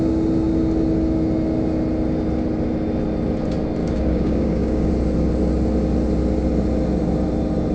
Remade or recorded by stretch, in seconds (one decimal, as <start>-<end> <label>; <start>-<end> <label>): 0.0-3.8 recorded; 3.8-4.9 remade; 4.9-7.7 recorded